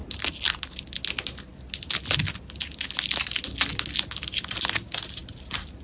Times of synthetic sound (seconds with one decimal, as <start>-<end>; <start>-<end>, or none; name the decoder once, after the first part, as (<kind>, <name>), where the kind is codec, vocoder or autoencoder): none

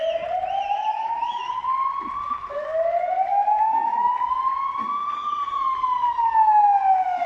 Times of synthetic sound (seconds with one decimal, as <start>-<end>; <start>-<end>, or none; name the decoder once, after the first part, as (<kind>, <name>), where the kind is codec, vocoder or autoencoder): 0.7-1.5 (autoencoder, DAC-VAE); 3.3-4.1

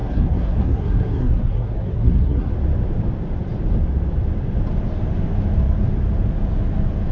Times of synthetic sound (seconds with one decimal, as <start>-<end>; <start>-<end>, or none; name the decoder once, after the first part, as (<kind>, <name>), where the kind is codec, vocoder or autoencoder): 0.0-2.5 (codec, SNAC)

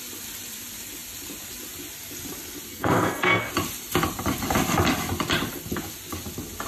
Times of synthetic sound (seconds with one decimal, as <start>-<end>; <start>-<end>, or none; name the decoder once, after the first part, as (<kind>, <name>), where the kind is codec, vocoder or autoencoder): 2.7-3.5 (codec, SNAC)

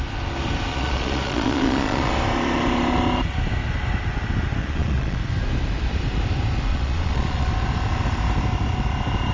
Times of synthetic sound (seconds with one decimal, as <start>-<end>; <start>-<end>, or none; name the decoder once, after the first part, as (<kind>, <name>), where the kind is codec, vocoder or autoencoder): 0.7-2.1 (vocoder, Vocos); 4.6-5.2; 6.7-7.5

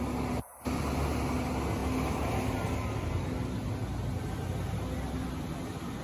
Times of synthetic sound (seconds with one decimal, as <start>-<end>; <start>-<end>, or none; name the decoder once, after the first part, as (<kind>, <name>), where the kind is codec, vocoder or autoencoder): none

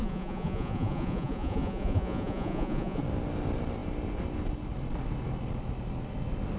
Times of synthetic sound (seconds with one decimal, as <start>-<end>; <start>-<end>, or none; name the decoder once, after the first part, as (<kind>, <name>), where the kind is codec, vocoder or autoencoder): 0.0-3.0 (vocoder, Vocos)

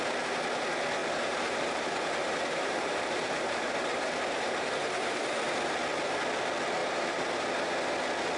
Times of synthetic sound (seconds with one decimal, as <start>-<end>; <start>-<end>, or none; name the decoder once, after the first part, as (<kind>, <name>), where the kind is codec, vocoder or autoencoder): 1.0-5.4 (vocoder, BigVGAN v2); 6.8-7.5